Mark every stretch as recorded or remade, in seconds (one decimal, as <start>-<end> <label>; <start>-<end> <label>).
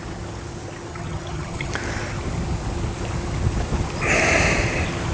0.0-0.9 recorded; 0.9-1.7 remade; 1.7-5.1 recorded